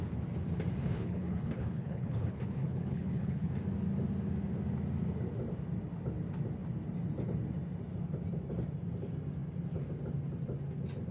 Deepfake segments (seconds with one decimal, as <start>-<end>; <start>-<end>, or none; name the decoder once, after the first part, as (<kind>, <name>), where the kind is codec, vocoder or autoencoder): 0.8-3.5 (codec, HILCodec)